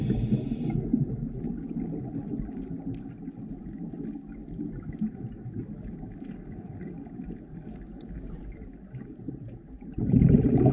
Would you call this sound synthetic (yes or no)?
no